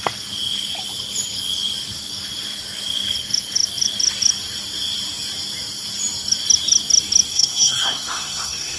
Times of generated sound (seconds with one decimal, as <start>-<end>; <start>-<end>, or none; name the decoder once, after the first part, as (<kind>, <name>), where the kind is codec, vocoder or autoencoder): 7.3-8.8 (codec, SNAC)